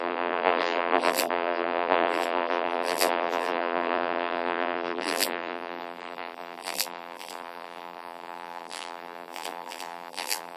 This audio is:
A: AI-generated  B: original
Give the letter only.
A